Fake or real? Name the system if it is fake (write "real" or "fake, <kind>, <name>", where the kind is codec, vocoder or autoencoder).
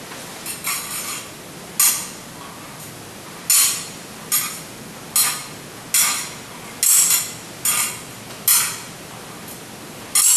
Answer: real